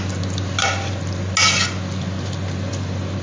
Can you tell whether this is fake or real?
real